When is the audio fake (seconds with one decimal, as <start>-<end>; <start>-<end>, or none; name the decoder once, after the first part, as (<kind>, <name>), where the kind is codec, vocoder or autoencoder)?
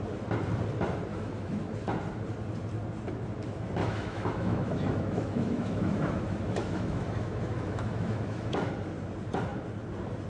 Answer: 1.1-1.6 (autoencoder, DAC-VAE); 3.8-8.7